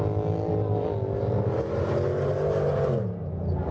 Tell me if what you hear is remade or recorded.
recorded